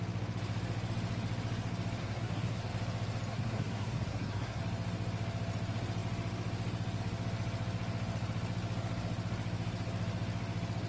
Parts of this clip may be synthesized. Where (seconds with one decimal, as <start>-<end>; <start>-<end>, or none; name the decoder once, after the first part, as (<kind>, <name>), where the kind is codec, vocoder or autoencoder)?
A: 2.0-2.7 (codec, SNAC); 3.3-4.6